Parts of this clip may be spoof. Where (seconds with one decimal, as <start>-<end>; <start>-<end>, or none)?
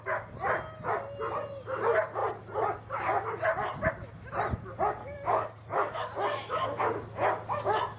5.0-6.8